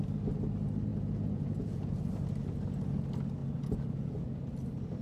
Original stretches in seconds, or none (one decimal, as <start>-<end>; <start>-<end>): 0.0-0.9; 2.1-3.4; 4.5-5.0